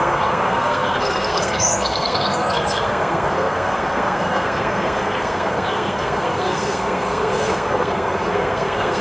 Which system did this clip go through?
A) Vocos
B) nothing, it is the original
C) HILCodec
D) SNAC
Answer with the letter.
D